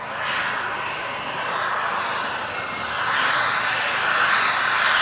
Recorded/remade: recorded